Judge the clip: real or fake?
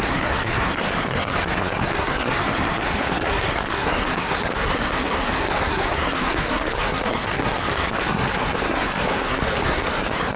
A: fake